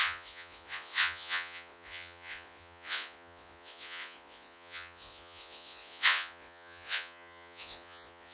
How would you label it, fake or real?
fake